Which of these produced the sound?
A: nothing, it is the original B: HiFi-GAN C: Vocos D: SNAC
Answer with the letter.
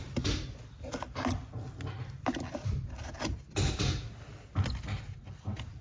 A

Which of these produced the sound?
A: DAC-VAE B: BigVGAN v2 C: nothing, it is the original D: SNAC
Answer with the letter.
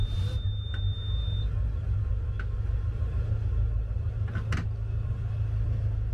C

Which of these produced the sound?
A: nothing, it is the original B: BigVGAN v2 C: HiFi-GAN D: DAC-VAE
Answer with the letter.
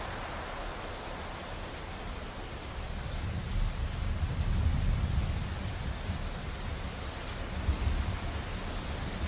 A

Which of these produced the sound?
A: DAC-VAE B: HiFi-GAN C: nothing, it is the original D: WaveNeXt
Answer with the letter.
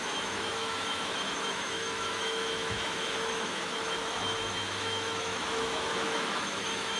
A